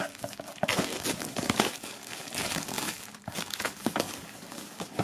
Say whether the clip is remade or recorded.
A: remade